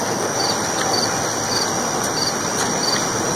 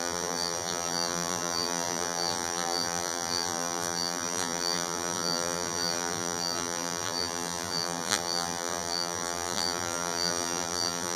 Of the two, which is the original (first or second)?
first